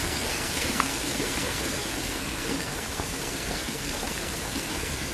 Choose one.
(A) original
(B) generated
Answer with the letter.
B